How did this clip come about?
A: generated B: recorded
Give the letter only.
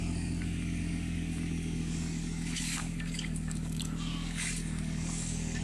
A